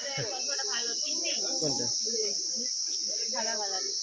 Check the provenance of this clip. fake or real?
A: real